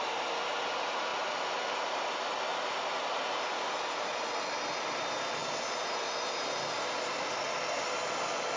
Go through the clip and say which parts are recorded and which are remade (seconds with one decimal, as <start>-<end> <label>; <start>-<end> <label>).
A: 0.0-0.5 remade; 0.5-8.6 recorded